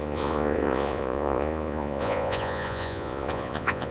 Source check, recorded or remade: remade